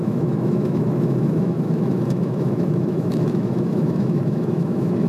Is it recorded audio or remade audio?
remade